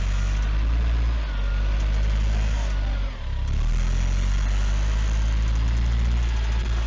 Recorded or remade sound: recorded